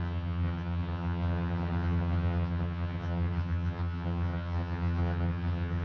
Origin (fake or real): fake